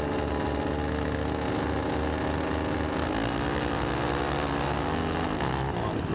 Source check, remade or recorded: recorded